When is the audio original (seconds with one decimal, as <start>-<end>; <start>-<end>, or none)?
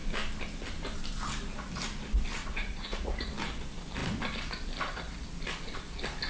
0.0-2.4; 3.3-6.3